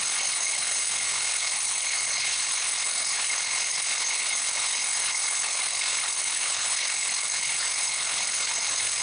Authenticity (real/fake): fake